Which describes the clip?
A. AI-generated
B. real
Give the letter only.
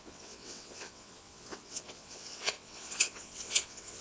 A